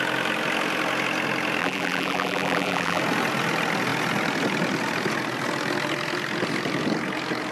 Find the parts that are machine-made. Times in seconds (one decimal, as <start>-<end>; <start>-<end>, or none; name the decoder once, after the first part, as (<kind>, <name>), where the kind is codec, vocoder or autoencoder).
1.6-3.0 (vocoder, BigVGAN v2)